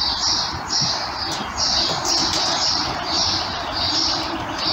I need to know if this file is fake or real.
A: fake